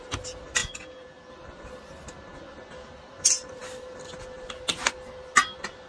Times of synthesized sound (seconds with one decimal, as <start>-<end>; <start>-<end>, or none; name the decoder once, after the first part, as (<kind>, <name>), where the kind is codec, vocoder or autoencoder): 0.6-1.3 (vocoder, Vocos)